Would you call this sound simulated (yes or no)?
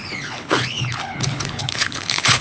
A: yes